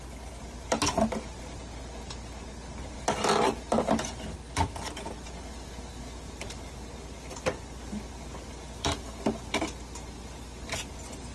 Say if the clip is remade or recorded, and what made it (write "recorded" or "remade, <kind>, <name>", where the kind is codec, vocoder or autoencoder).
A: recorded